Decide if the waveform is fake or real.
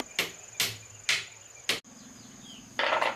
real